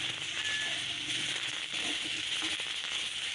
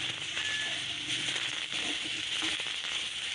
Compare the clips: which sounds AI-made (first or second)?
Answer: second